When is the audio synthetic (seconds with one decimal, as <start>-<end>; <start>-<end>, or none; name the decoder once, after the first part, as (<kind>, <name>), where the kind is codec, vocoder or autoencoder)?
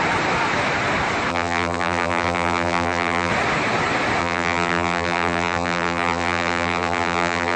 1.3-3.3 (vocoder, BigVGAN v2); 4.2-7.6